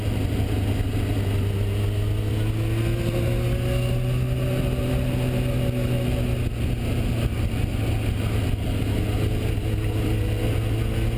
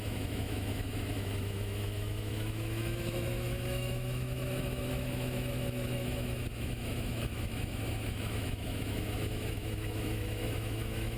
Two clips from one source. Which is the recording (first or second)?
first